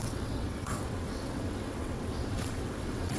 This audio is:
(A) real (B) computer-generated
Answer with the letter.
B